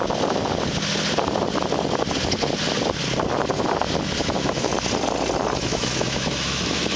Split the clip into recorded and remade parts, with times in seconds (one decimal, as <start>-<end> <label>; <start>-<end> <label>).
0.0-4.2 recorded; 4.2-4.7 remade; 4.7-5.6 recorded; 5.6-7.0 remade